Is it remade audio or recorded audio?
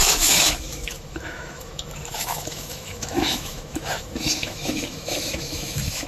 remade